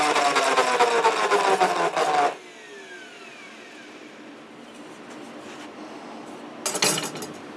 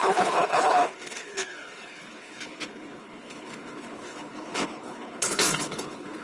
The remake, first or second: second